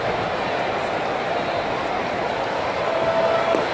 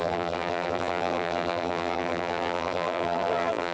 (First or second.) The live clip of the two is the first